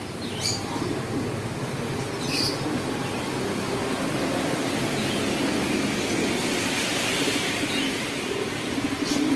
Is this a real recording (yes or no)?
yes